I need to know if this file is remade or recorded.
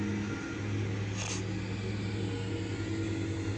recorded